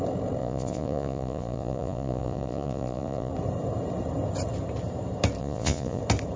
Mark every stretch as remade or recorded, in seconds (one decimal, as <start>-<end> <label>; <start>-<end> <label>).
0.0-0.4 recorded; 0.4-3.3 remade; 3.3-5.4 recorded; 5.4-6.0 remade; 6.0-6.4 recorded